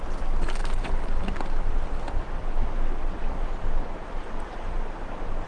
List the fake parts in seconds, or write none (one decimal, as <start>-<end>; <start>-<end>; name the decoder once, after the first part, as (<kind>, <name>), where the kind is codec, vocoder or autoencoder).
none